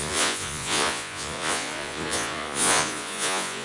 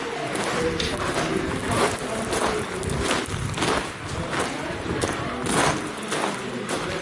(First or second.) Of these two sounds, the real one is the second